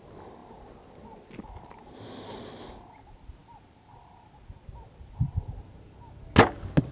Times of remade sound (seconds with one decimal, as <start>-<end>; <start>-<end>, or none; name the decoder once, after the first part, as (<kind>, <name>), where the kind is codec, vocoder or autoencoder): none